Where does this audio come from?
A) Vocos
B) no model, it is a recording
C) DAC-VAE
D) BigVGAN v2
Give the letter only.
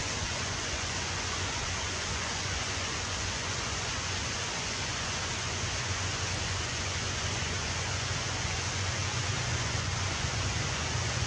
A